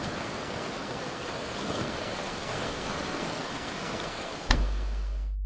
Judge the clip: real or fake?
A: fake